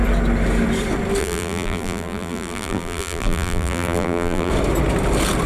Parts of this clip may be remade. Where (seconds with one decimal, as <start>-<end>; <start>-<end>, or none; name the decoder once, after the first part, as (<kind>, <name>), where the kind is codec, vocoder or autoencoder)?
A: 1.2-4.5 (vocoder, BigVGAN v2)